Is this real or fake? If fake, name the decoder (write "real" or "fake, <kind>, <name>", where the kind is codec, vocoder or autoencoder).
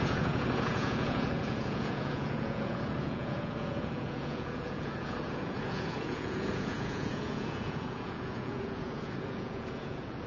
fake, vocoder, Vocos